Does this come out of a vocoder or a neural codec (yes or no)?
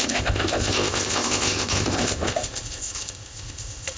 yes